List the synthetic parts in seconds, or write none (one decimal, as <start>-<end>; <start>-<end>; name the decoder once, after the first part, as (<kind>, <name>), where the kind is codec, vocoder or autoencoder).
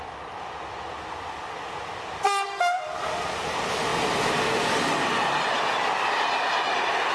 3.9-5.6 (vocoder, BigVGAN v2)